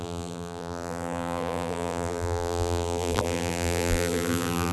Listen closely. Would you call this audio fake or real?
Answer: fake